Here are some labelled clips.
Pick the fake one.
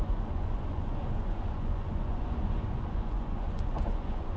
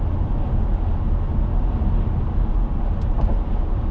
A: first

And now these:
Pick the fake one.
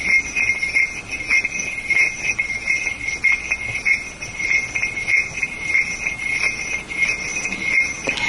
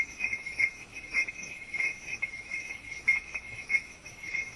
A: second